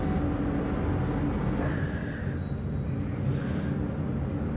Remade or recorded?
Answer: recorded